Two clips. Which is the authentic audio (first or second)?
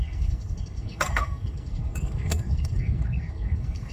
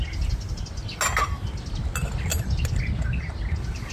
second